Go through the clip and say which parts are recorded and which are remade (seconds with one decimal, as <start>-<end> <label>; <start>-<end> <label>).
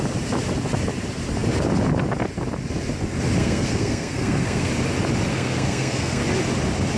0.0-3.4 recorded; 3.4-4.7 remade; 4.7-5.3 recorded; 5.3-6.2 remade; 6.2-7.0 recorded